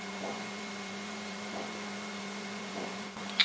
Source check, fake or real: fake